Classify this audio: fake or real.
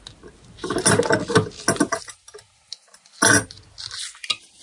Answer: real